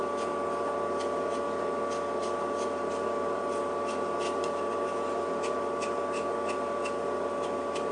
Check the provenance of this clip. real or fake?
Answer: real